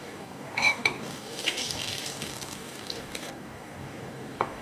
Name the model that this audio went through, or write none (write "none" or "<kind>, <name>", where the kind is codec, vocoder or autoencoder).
codec, DAC